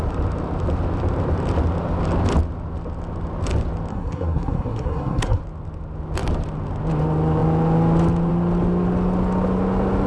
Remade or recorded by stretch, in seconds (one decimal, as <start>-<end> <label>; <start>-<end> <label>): 0.0-3.9 recorded; 3.9-5.4 remade; 5.4-10.1 recorded